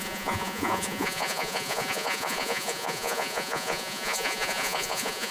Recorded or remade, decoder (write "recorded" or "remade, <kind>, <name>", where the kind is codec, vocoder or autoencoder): remade, vocoder, Vocos